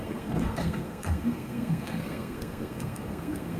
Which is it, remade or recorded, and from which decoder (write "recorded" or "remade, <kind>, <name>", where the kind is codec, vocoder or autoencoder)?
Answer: remade, codec, SNAC